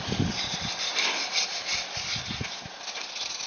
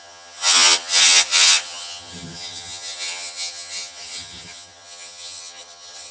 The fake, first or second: second